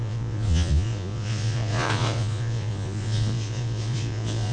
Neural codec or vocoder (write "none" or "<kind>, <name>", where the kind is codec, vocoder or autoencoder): vocoder, Vocos